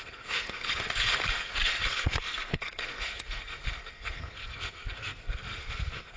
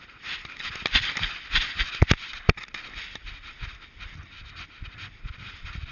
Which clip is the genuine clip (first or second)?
second